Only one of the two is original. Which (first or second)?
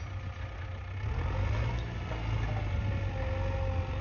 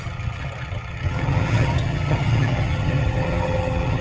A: first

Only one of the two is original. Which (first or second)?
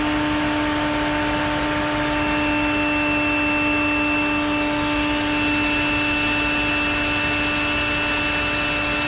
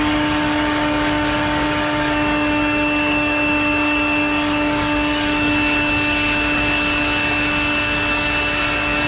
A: first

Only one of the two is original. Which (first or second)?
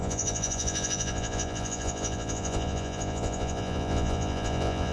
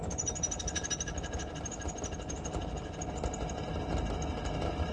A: second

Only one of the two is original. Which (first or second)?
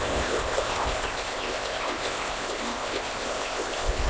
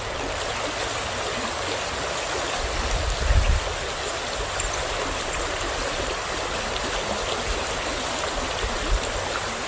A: second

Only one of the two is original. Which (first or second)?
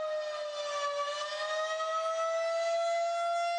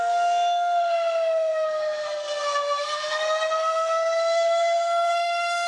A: first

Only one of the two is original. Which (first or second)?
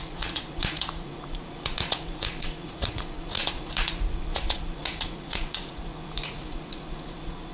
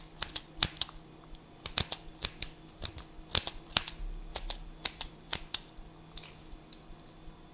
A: second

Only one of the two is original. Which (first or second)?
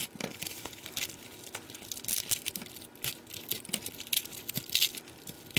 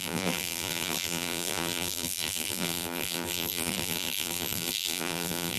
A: first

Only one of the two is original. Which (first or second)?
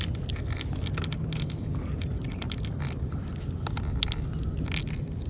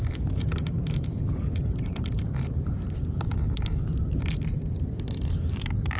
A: first